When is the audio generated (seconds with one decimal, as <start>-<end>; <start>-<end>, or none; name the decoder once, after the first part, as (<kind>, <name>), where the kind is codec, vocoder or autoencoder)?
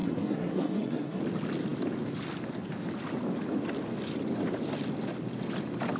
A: 0.0-1.2 (codec, SNAC)